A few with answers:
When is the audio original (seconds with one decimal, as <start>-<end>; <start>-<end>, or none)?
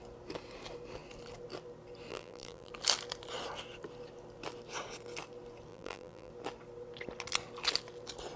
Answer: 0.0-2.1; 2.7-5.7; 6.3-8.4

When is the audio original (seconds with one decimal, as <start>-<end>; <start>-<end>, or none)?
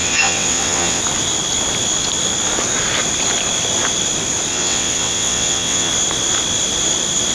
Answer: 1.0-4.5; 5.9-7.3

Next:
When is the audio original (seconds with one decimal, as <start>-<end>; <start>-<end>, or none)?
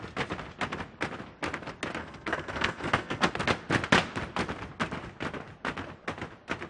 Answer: 0.0-2.0; 3.3-6.7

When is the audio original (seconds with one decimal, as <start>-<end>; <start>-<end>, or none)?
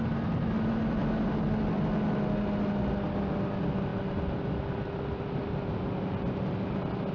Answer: 0.0-7.1